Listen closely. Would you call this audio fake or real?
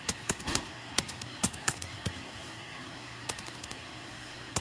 fake